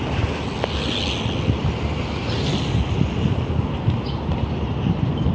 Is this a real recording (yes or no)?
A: yes